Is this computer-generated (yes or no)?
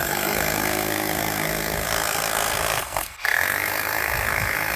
yes